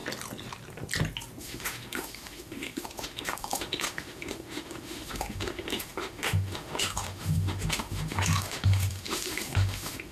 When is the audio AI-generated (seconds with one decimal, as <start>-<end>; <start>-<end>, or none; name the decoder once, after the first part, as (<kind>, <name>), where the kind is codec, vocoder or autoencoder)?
1.4-10.1 (autoencoder, DAC-VAE)